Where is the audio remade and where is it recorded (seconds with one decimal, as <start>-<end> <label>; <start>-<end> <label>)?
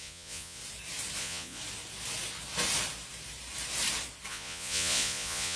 0.0-0.6 remade; 0.6-1.2 recorded; 1.2-1.6 remade; 1.6-4.3 recorded; 4.3-5.6 remade